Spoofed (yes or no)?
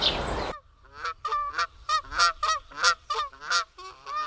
no